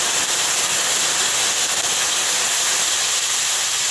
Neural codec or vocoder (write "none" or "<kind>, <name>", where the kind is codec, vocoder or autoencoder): none